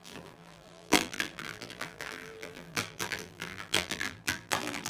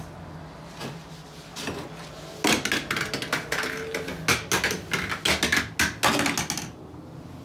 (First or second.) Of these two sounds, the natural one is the second